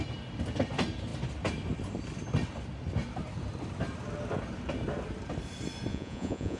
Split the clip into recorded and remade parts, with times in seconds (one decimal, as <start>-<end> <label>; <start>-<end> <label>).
0.0-5.9 recorded; 5.9-6.6 remade